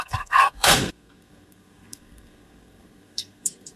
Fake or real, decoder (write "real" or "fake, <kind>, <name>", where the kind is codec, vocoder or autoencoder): fake, codec, SNAC